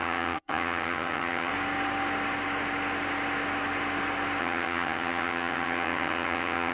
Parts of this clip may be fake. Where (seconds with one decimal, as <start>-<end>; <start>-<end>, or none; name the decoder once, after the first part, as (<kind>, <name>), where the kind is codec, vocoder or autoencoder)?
0.0-1.5 (vocoder, HiFi-GAN); 4.4-6.7